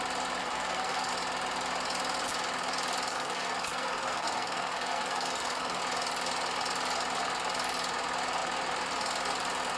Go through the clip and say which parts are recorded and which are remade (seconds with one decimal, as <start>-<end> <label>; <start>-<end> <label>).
0.0-0.4 recorded; 0.4-1.1 remade; 1.1-3.1 recorded; 3.1-5.8 remade; 5.8-9.8 recorded